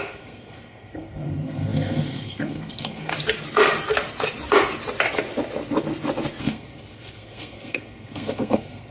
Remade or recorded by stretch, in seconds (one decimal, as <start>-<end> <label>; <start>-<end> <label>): 0.0-3.1 remade; 3.1-6.4 recorded; 6.4-8.9 remade